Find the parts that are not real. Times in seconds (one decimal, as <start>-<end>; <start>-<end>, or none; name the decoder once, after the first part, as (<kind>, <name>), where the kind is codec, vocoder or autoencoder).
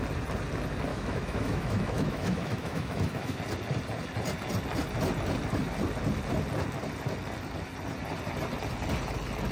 0.9-3.4 (autoencoder, DAC-VAE)